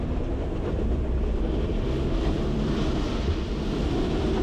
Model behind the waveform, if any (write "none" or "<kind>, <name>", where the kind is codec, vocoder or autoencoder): vocoder, BigVGAN v2